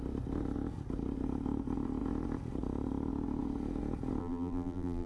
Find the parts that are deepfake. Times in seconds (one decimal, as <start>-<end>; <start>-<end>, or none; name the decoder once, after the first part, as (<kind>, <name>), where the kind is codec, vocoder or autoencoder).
4.2-5.1 (vocoder, BigVGAN v2)